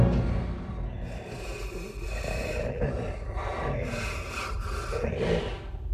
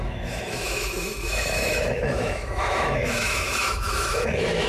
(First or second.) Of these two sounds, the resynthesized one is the second